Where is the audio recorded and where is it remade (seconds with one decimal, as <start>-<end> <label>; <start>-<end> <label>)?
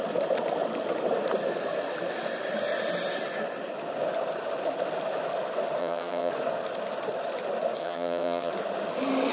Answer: 0.0-5.8 recorded; 5.8-6.3 remade; 6.3-7.8 recorded; 7.8-8.5 remade; 8.5-9.3 recorded